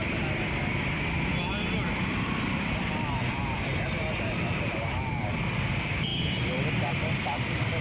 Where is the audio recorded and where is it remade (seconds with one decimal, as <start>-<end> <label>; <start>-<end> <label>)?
0.0-0.6 remade; 0.6-2.7 recorded; 2.7-3.7 remade; 3.7-4.4 recorded; 4.4-7.8 remade

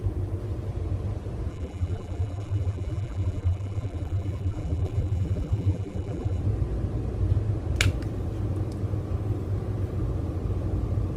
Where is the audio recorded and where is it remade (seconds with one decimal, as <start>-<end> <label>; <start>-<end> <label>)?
0.0-1.5 recorded; 1.5-6.4 remade; 6.4-11.2 recorded

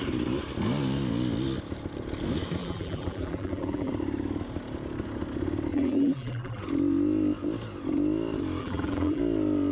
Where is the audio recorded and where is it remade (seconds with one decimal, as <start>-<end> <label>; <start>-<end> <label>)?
0.0-2.6 recorded; 2.6-3.9 remade; 3.9-5.7 recorded; 5.7-6.6 remade; 6.6-8.6 recorded; 8.6-9.2 remade; 9.2-9.7 recorded

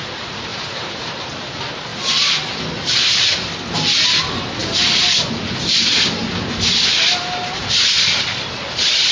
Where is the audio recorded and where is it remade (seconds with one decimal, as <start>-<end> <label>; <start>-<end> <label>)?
0.0-0.5 recorded; 0.5-1.1 remade; 1.1-1.9 recorded; 1.9-2.6 remade; 2.6-9.1 recorded

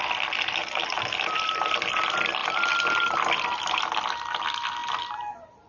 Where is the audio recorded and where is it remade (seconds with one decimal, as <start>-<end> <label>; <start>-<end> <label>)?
0.0-0.6 recorded; 0.6-1.7 remade; 1.7-2.4 recorded; 2.4-3.8 remade; 3.8-5.7 recorded

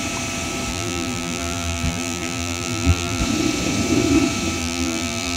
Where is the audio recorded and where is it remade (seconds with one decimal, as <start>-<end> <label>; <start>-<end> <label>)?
0.0-0.7 recorded; 0.7-3.2 remade; 3.2-4.6 recorded; 4.6-5.4 remade

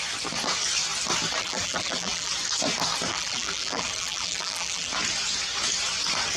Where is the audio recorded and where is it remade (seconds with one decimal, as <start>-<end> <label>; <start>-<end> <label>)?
0.0-1.4 recorded; 1.4-2.3 remade; 2.3-3.1 recorded; 3.1-4.9 remade; 4.9-6.4 recorded

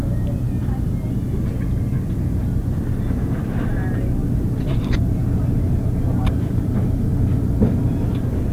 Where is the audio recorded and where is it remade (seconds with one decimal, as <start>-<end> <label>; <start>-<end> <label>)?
0.0-8.5 remade